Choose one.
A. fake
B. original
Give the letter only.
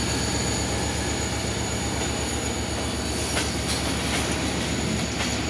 B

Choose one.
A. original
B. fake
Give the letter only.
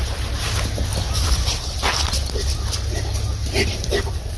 A